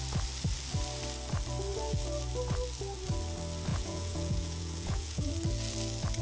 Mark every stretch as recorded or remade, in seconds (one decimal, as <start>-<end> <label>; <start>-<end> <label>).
0.0-3.7 recorded; 3.7-5.3 remade; 5.3-6.2 recorded